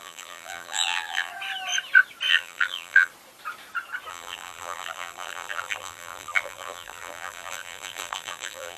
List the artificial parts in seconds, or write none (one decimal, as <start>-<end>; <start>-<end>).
0.0-1.3; 2.3-3.1; 4.1-8.8